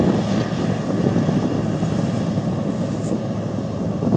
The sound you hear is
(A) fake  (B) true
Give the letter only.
B